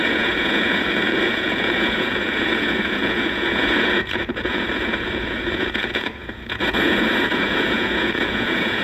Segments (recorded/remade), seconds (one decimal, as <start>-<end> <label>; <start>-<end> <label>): 0.0-8.8 remade